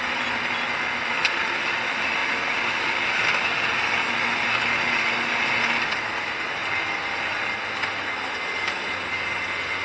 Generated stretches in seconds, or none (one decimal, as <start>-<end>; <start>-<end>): none